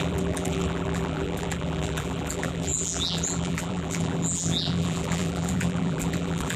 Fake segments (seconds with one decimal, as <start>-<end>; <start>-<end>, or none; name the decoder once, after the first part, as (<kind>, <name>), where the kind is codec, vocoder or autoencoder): 0.0-6.6 (vocoder, BigVGAN v2)